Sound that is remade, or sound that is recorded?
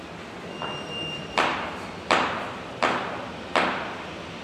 recorded